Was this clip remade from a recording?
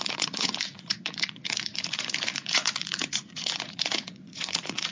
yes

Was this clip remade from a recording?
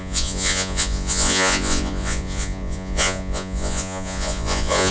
yes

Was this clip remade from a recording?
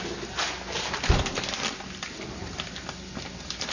no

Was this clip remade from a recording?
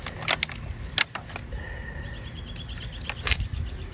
no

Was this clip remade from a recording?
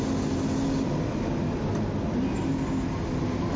no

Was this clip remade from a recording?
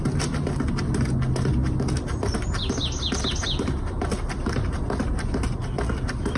no